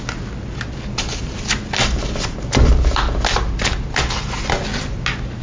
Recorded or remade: recorded